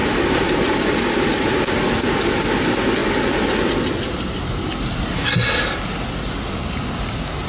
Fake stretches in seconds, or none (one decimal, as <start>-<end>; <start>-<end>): none